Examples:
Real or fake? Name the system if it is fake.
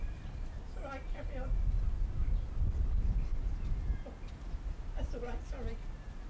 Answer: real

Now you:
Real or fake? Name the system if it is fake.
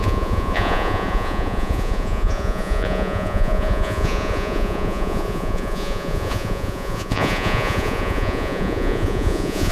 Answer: fake, vocoder, Vocos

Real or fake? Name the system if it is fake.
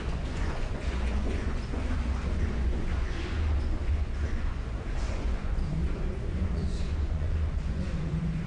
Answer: fake, vocoder, Vocos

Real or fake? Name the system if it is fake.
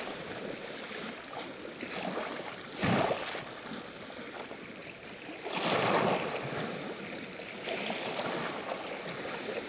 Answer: real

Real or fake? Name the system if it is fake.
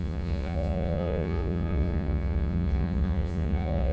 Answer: fake, vocoder, Vocos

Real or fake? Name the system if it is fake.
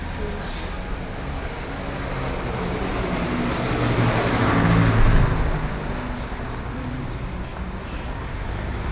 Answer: real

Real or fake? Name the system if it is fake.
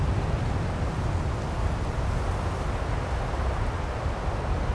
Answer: real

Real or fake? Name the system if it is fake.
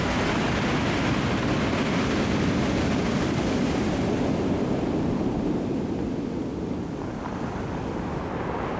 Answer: real